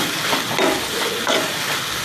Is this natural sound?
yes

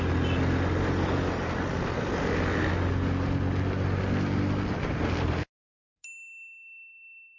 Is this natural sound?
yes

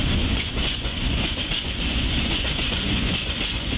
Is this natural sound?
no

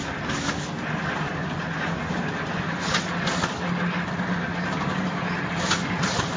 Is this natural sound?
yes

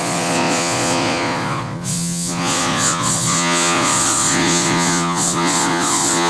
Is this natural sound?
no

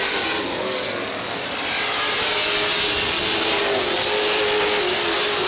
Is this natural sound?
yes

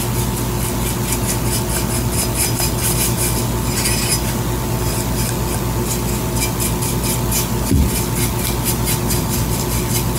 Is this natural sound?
yes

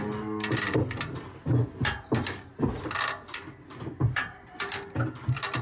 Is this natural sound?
yes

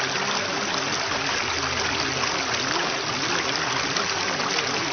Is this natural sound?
yes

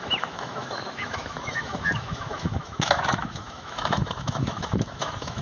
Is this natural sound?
no